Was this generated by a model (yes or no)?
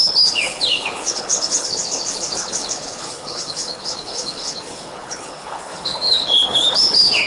yes